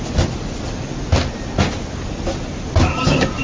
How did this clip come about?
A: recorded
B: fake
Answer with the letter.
A